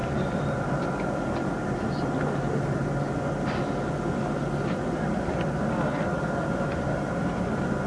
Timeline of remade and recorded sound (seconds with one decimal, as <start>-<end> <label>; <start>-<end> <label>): 0.0-7.9 recorded